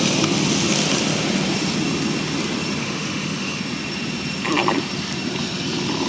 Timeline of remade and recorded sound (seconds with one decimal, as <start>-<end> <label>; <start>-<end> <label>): 0.0-2.8 recorded; 2.8-3.6 remade; 3.6-6.1 recorded